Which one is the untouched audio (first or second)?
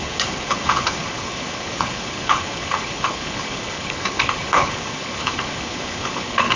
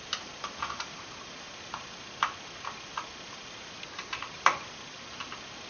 second